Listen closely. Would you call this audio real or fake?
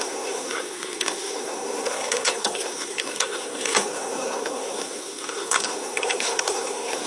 fake